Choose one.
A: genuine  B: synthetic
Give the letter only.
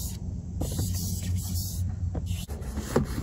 B